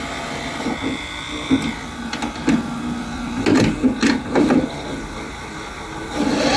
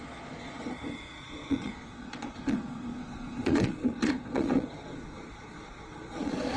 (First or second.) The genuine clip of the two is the first